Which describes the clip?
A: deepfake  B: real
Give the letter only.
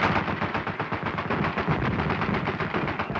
B